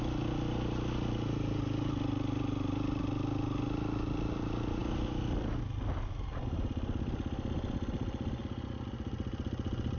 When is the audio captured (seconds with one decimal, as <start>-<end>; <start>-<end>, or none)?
0.0-10.0